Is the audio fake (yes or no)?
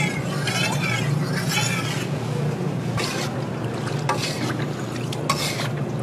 no